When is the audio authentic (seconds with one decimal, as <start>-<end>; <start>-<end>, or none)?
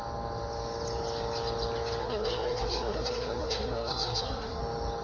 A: 0.0-2.0; 4.6-5.0